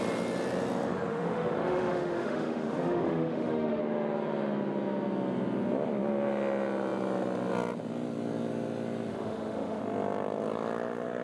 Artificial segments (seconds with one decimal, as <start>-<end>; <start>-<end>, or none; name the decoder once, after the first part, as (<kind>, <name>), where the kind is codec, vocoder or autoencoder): 1.1-3.8 (autoencoder, DAC-VAE); 9.1-9.8